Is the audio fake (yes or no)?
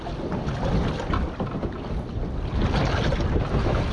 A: no